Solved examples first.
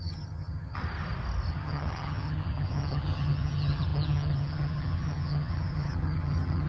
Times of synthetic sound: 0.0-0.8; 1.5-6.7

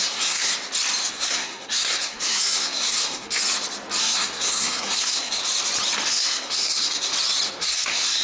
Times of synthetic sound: 0.0-0.5; 1.1-3.4; 4.0-5.4; 6.1-7.1; 7.6-8.2

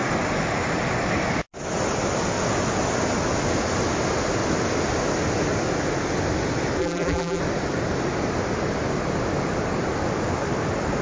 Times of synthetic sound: 6.8-7.4

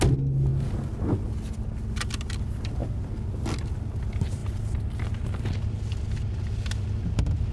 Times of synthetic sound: none

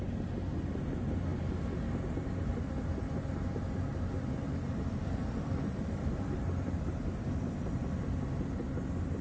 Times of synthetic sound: 3.9-7.8

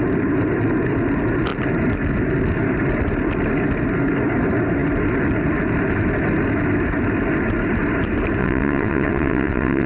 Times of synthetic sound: 8.4-9.9

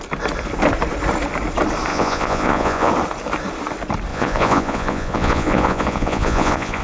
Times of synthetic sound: 1.9-2.9; 4.1-6.8